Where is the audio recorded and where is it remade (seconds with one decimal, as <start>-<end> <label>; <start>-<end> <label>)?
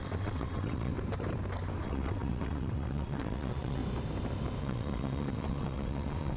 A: 0.0-0.9 remade; 0.9-1.8 recorded; 1.8-3.8 remade; 3.8-4.6 recorded; 4.6-6.4 remade